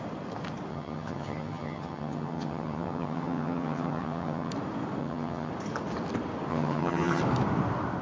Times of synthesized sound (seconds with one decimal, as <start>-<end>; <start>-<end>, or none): 0.7-4.5; 5.0-5.5; 6.5-7.2